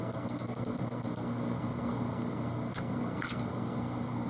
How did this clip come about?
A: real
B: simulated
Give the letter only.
B